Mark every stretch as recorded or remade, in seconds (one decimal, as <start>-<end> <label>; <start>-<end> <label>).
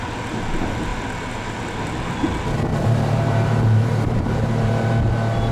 0.0-2.7 recorded; 2.7-4.9 remade; 4.9-5.5 recorded